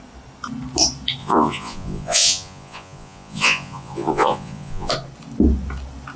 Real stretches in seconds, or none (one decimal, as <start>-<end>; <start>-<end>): 0.0-1.2; 4.9-6.2